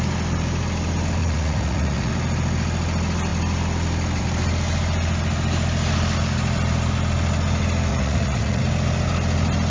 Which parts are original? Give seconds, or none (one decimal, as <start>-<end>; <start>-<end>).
0.0-1.2; 2.1-7.9; 8.6-9.7